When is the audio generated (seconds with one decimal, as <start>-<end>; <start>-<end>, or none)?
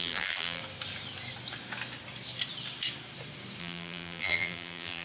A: 0.0-0.6; 3.6-5.0